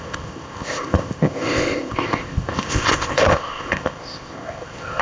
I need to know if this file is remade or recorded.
remade